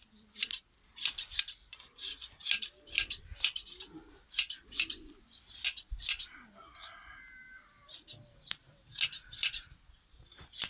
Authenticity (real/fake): real